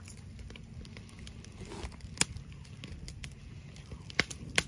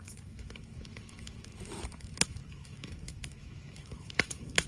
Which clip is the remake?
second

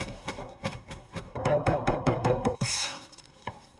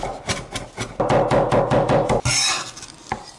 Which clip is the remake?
first